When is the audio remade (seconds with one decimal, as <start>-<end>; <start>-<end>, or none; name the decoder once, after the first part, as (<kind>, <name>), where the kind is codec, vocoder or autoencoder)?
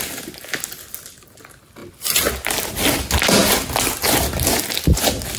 none